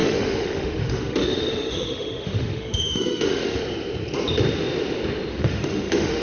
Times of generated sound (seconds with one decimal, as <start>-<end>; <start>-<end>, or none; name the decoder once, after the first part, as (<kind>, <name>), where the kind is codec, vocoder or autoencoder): 0.0-3.6 (autoencoder, DAC-VAE); 5.3-6.2